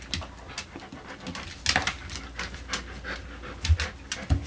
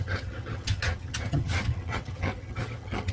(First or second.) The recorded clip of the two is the first